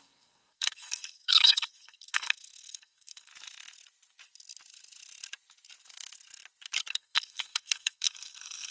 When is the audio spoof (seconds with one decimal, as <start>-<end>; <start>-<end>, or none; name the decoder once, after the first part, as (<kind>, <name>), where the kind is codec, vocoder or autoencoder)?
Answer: 0.0-3.3 (codec, SNAC); 6.9-8.7